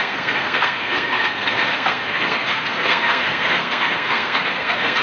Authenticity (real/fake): fake